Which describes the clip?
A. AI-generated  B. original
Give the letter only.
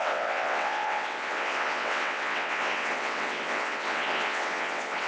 A